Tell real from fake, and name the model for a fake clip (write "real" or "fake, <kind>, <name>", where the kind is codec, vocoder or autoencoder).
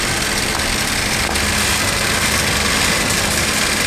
real